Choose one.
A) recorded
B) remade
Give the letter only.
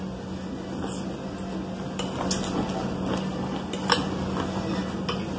A